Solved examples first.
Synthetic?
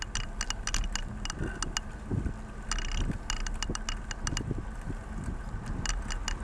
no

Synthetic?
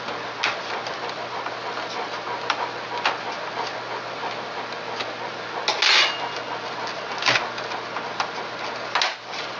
no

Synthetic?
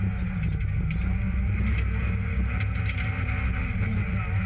no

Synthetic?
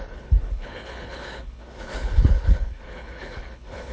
yes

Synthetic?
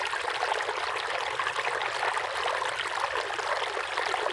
no